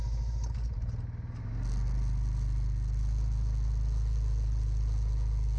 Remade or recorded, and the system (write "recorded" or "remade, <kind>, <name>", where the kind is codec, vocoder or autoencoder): recorded